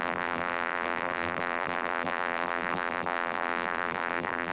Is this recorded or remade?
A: remade